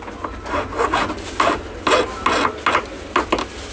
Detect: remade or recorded recorded